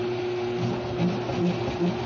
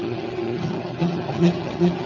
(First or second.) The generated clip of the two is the second